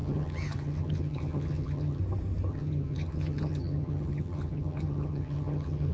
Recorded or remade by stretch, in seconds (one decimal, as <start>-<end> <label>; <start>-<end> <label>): 0.0-2.0 remade; 2.0-2.5 recorded; 2.5-5.9 remade